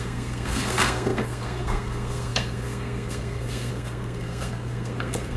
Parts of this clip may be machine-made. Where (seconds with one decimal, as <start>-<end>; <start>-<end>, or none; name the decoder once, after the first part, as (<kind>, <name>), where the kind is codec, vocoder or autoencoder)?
0.0-5.4 (codec, SNAC)